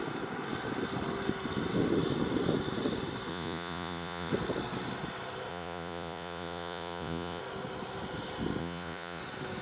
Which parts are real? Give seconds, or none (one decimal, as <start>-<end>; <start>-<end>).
0.0-3.3; 4.3-5.5; 7.4-8.6; 9.2-9.6